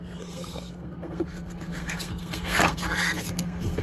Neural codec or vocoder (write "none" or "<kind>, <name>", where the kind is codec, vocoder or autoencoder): codec, SNAC